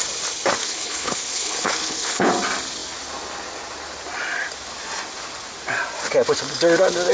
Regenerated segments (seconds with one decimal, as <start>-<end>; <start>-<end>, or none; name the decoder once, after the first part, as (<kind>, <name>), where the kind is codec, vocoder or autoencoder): 0.6-2.3 (codec, HILCodec)